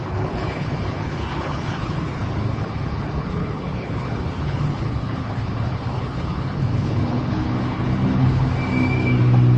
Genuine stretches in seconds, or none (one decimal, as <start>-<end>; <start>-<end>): 8.5-9.6